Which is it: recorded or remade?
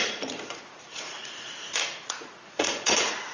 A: remade